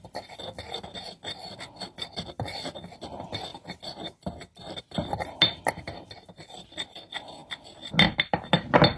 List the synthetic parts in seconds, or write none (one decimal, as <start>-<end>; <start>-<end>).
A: none